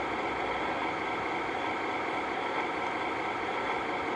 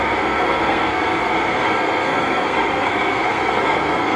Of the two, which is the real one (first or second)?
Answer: first